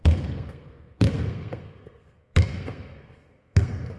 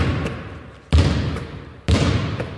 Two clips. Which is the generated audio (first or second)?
first